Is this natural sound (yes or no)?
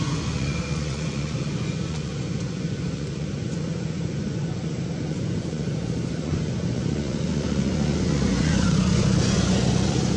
no